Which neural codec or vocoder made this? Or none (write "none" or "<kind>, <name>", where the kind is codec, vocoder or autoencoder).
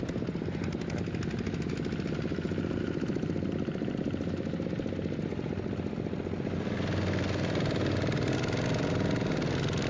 none